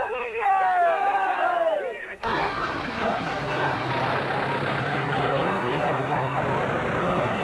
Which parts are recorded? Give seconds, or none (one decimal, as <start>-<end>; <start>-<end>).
0.5-2.0; 3.9-4.8; 6.4-7.0